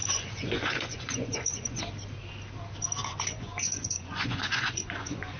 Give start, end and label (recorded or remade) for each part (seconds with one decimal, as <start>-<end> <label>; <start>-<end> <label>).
0.0-1.8 remade; 1.8-3.1 recorded; 3.1-5.4 remade